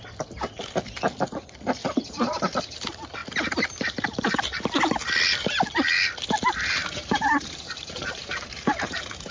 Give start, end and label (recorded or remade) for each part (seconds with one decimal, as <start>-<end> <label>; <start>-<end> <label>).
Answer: 0.0-1.8 recorded; 1.8-2.6 remade; 2.6-3.2 recorded; 3.2-4.4 remade; 4.4-6.8 recorded; 6.8-9.3 remade